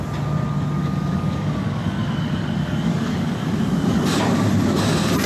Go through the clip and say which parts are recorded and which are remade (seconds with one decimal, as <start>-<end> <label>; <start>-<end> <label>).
0.0-0.8 recorded; 0.8-4.0 remade; 4.0-5.3 recorded